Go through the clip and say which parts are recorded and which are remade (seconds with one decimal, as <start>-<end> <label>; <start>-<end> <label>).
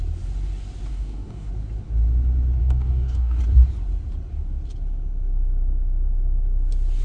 0.0-0.9 recorded; 0.9-1.5 remade; 1.5-2.6 recorded; 2.6-3.4 remade; 3.4-7.0 recorded